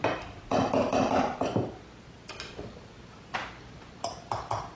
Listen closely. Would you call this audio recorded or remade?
recorded